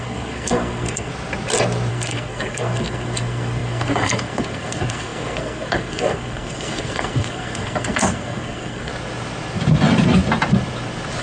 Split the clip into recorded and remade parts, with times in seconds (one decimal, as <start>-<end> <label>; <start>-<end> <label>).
0.0-1.1 remade; 1.1-1.9 recorded; 1.9-8.9 remade; 8.9-11.2 recorded